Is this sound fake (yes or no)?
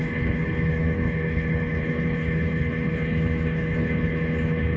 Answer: yes